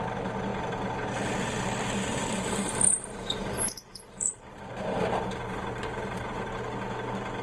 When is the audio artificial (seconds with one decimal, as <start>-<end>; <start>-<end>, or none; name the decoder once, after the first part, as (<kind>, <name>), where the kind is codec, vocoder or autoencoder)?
2.1-6.5 (vocoder, BigVGAN v2)